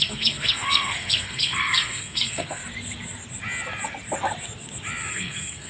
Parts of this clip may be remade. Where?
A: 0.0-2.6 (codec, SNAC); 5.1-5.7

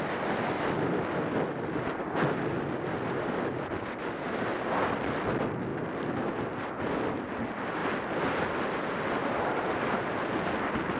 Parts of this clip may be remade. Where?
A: none

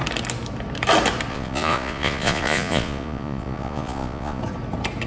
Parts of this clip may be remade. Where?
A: 1.3-4.4 (vocoder, Vocos)

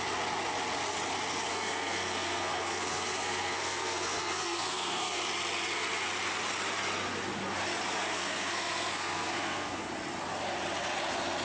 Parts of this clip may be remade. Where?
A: 1.5-5.2 (codec, SNAC); 8.0-9.9

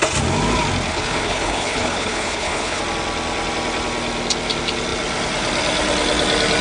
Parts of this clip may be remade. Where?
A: 0.9-2.8 (codec, HILCodec)